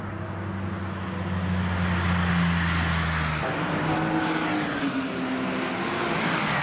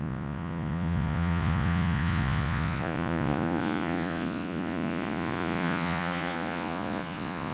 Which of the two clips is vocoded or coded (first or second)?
second